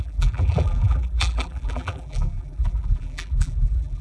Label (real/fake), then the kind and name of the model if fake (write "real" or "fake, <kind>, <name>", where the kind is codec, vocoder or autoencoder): fake, vocoder, BigVGAN v2